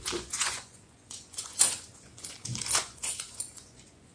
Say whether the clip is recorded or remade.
remade